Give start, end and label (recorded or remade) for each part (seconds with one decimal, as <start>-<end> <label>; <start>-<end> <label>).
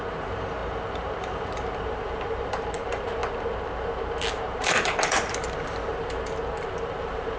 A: 0.0-3.2 remade; 3.2-4.3 recorded; 4.3-5.9 remade; 5.9-6.7 recorded; 6.7-7.4 remade